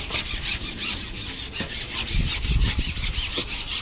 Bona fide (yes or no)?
yes